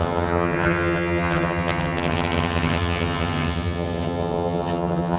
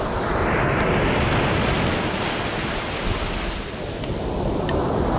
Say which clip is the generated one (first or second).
first